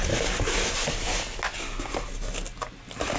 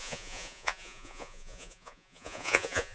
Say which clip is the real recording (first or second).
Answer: first